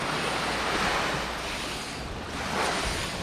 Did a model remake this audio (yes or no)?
no